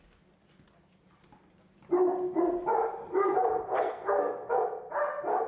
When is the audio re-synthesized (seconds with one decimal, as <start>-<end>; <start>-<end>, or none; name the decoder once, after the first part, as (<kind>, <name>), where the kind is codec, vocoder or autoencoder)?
3.5-4.5 (codec, SNAC)